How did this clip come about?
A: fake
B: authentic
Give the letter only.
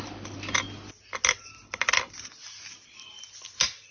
B